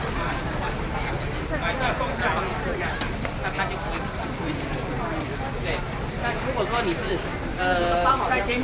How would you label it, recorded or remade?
recorded